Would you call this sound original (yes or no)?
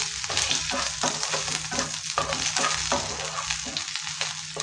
yes